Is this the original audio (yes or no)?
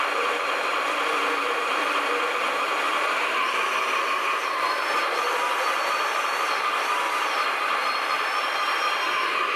no